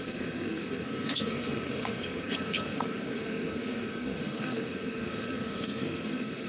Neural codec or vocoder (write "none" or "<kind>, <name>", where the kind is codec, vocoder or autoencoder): codec, SNAC